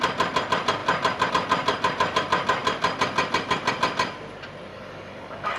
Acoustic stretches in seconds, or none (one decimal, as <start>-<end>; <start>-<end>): 0.0-4.7